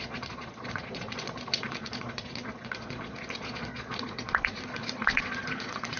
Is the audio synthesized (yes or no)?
yes